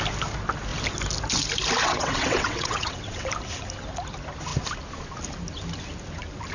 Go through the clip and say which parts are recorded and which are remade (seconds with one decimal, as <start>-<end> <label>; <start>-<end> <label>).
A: 0.0-1.8 recorded; 1.8-3.3 remade; 3.3-6.5 recorded